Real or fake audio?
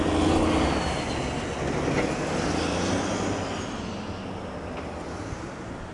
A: real